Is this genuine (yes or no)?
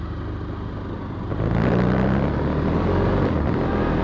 yes